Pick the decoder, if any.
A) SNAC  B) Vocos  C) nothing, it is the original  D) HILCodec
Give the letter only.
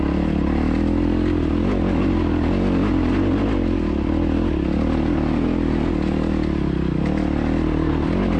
C